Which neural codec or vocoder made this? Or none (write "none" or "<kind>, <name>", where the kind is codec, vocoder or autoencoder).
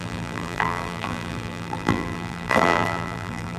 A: vocoder, BigVGAN v2